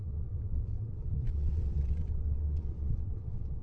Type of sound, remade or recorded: remade